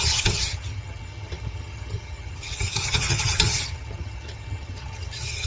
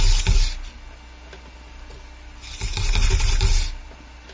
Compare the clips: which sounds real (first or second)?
second